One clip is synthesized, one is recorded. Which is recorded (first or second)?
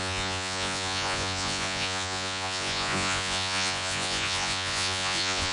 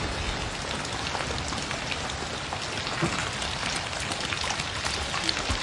second